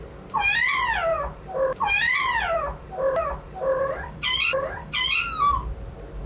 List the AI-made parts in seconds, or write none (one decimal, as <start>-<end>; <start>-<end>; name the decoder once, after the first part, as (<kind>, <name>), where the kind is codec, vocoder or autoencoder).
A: 1.1-4.9 (vocoder, BigVGAN v2)

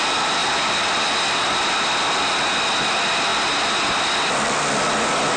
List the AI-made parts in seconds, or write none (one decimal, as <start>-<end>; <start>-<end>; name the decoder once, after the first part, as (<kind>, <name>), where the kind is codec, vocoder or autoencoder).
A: none

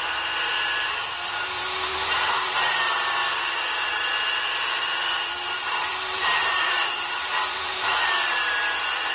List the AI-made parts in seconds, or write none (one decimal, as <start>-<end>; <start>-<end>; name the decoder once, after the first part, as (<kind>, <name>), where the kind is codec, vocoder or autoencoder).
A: 0.0-9.1 (vocoder, BigVGAN v2)

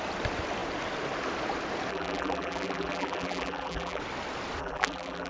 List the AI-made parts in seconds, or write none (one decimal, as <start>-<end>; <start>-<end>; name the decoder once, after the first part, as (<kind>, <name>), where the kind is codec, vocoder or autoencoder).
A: 1.9-4.0 (vocoder, BigVGAN v2); 4.6-5.3

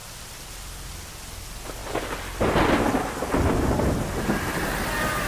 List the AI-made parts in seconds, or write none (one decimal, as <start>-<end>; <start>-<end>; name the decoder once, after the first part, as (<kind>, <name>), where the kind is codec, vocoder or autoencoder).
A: none

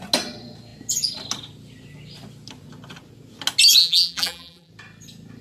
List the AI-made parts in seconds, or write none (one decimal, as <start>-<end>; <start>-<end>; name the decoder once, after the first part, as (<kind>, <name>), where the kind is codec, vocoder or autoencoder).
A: 3.8-4.7 (vocoder, BigVGAN v2)

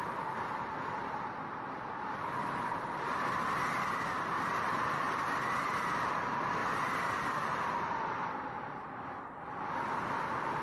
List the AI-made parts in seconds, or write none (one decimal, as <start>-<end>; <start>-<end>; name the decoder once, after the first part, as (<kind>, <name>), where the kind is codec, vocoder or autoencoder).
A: none

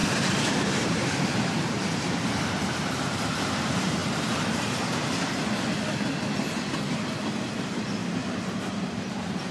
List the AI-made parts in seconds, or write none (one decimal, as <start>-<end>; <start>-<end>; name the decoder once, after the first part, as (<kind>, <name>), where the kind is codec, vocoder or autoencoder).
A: 0.0-4.0 (vocoder, BigVGAN v2); 7.5-8.0; 8.6-9.5